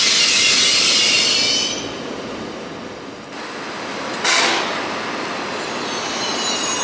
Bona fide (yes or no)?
yes